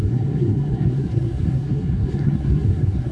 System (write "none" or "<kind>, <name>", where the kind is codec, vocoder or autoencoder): codec, SNAC